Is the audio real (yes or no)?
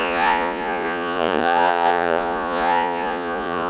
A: no